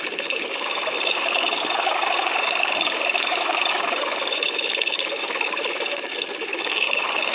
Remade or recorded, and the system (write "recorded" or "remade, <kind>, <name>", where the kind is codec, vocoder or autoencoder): remade, codec, DAC